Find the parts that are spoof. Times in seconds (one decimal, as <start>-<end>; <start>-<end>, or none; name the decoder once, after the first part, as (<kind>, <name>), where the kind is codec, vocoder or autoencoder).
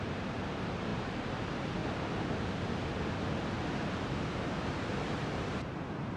0.0-1.8 (vocoder, BigVGAN v2); 4.4-6.2